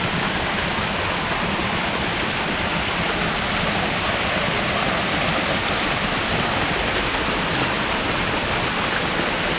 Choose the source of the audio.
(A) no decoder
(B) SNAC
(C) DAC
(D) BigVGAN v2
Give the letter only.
A